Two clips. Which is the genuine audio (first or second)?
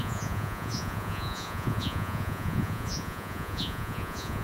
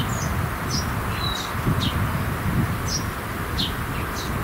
second